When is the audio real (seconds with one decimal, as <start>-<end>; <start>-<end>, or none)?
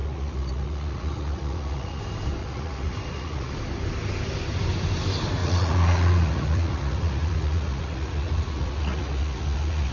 2.0-2.4; 3.5-5.4